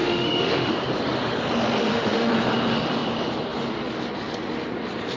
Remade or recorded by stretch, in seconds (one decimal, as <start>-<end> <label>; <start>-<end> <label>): 0.0-0.7 remade; 0.7-1.8 recorded; 1.8-2.3 remade; 2.3-5.2 recorded